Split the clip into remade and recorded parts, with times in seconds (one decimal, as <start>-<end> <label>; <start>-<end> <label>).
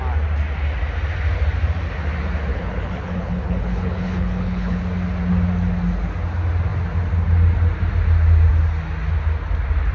0.0-2.5 recorded; 2.5-4.8 remade; 4.8-9.9 recorded